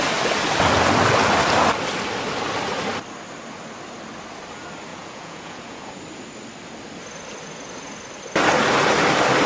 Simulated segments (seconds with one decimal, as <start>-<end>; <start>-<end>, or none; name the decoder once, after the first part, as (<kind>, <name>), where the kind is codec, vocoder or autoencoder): 4.9-6.0 (vocoder, Vocos)